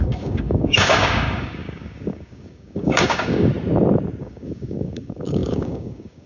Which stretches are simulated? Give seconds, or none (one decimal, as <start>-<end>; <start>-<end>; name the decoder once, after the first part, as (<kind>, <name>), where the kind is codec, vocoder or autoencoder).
0.0-3.5 (codec, DAC); 4.2-6.3